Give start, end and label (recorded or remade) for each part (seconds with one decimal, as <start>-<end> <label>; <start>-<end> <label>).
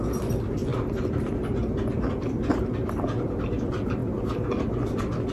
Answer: 0.0-5.3 recorded